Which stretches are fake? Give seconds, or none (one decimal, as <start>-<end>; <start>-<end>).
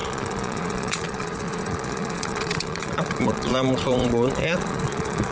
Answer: 0.0-5.3